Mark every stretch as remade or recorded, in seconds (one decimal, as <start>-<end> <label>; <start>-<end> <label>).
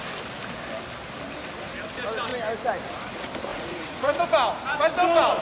0.0-3.5 recorded; 3.5-4.2 remade; 4.2-5.4 recorded